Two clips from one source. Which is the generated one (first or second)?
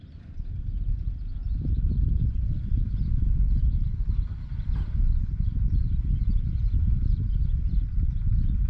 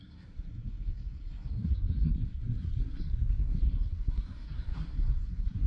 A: second